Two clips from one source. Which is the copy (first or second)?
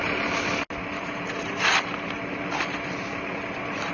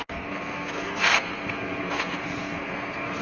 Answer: second